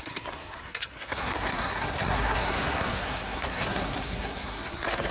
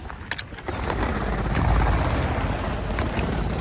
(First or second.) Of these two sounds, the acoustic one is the second